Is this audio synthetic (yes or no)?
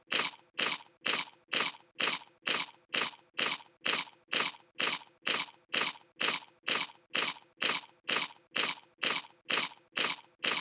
no